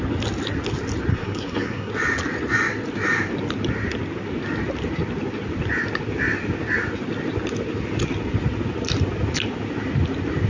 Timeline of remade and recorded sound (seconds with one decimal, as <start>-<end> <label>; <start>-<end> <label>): 0.0-1.1 recorded; 1.1-1.9 remade; 1.9-10.5 recorded